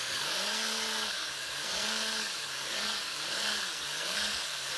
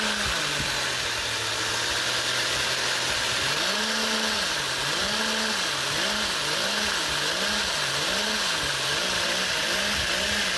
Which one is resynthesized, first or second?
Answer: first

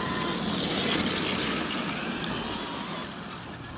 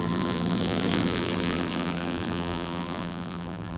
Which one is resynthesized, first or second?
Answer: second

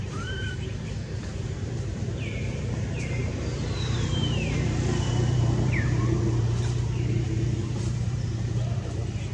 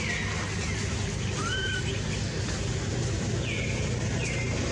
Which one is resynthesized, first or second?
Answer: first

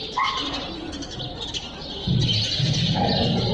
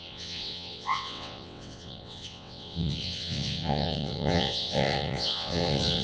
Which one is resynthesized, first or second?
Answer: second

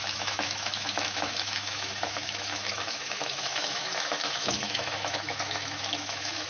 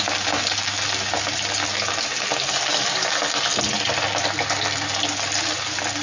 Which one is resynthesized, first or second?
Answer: first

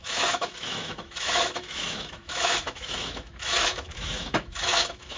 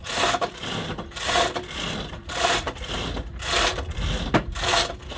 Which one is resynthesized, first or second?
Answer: first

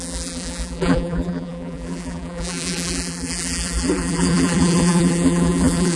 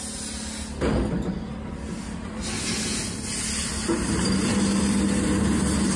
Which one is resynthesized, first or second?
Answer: first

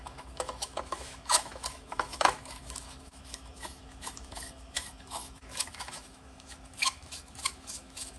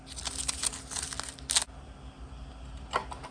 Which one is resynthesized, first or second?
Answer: first